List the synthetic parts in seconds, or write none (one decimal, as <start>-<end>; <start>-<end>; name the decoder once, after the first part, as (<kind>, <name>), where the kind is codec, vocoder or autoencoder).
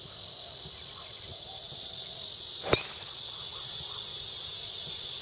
1.3-1.9 (vocoder, BigVGAN v2)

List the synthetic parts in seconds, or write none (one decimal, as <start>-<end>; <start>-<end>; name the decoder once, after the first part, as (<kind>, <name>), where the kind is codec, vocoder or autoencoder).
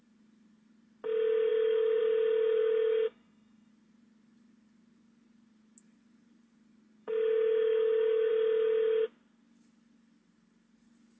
1.5-2.0 (autoencoder, DAC-VAE); 2.6-3.7; 7.0-8.3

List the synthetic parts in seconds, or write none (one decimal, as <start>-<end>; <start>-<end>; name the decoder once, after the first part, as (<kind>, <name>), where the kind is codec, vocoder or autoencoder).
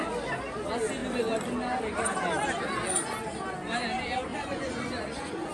4.3-5.5 (vocoder, Vocos)